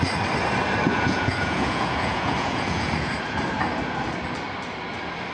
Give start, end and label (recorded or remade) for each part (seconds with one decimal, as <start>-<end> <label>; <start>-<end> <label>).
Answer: 0.0-0.9 recorded; 0.9-3.1 remade; 3.1-5.3 recorded